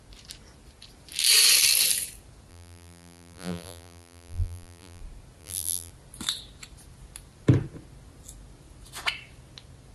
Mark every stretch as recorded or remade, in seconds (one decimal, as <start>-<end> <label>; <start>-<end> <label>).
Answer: 0.0-2.5 recorded; 2.5-5.0 remade; 5.0-5.4 recorded; 5.4-5.9 remade; 5.9-9.9 recorded